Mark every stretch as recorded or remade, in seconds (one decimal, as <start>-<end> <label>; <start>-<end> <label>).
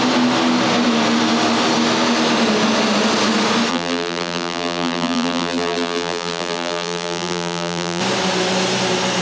0.0-3.7 recorded; 3.7-8.0 remade; 8.0-9.2 recorded